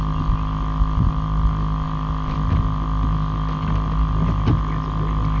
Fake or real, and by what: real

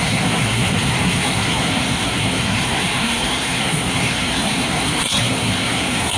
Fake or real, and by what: fake, codec, SNAC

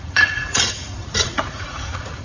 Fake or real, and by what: fake, vocoder, Vocos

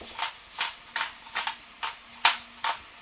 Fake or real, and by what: real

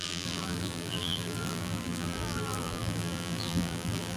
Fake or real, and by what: fake, vocoder, BigVGAN v2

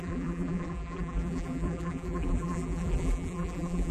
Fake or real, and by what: fake, vocoder, BigVGAN v2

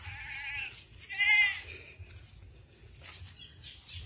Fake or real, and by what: real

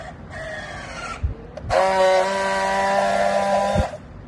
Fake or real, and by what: real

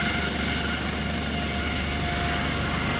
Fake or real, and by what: real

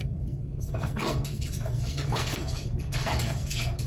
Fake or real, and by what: fake, codec, SNAC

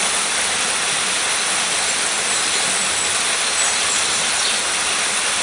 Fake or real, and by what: real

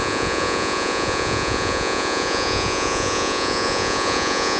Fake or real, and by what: fake, vocoder, Vocos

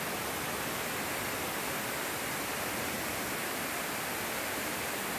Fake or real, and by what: real